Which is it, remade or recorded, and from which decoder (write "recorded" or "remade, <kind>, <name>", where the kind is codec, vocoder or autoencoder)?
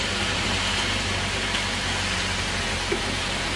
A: recorded